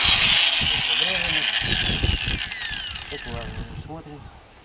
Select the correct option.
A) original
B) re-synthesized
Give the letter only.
A